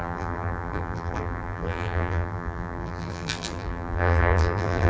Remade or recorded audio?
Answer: remade